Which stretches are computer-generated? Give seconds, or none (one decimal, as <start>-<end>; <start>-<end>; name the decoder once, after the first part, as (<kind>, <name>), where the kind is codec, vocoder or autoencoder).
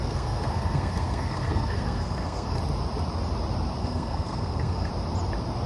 0.0-2.6 (codec, SNAC); 3.8-4.9